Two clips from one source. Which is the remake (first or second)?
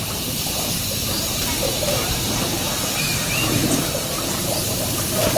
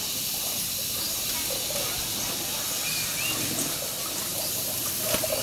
first